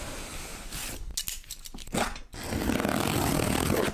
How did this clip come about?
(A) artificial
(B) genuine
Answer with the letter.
B